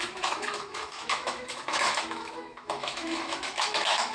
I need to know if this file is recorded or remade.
remade